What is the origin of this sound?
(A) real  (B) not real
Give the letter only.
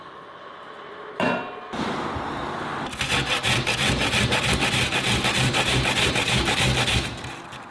A